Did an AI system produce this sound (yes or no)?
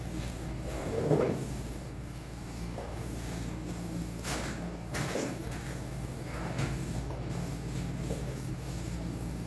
yes